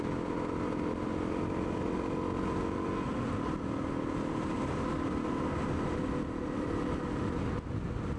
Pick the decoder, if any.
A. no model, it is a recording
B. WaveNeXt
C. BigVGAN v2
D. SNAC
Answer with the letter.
A